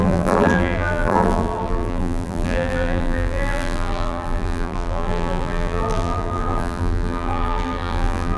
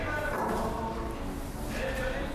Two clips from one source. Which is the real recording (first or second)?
second